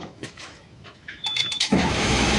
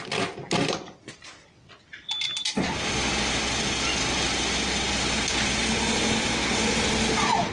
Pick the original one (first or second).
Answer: second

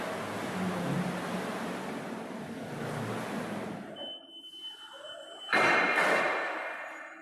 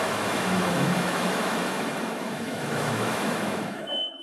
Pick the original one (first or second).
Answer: first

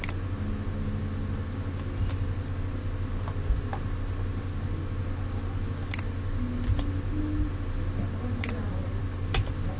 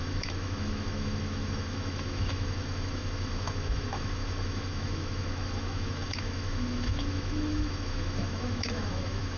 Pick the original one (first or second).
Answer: first